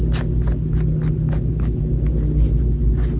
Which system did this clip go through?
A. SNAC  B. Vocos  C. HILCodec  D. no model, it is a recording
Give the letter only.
D